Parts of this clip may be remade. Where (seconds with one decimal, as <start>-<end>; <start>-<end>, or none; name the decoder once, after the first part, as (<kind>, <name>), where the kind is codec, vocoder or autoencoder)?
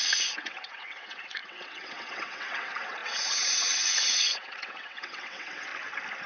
0.0-5.7 (vocoder, WaveNeXt)